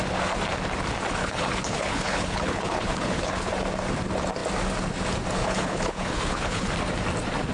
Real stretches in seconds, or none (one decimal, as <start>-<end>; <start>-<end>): 0.0-1.2; 3.5-5.4; 6.7-7.5